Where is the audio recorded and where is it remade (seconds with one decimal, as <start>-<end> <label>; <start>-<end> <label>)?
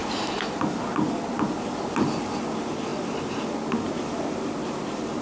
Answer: 0.0-0.8 remade; 0.8-5.2 recorded